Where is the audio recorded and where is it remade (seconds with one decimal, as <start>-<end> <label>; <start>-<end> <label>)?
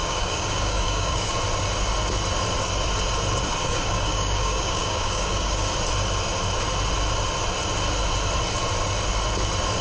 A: 0.0-1.3 remade; 1.3-3.6 recorded; 3.6-5.7 remade; 5.7-9.8 recorded